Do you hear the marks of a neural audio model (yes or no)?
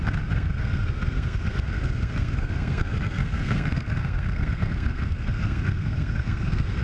yes